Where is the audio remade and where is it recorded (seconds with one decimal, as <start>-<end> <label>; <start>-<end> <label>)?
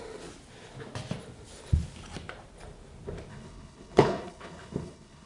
0.0-3.3 recorded; 3.3-5.3 remade